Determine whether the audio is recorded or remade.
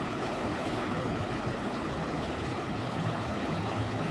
remade